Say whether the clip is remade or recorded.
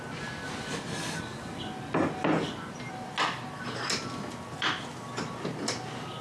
recorded